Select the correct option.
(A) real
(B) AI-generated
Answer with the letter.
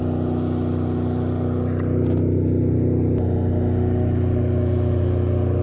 A